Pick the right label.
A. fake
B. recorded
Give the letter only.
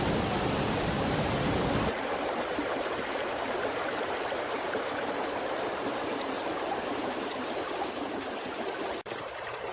A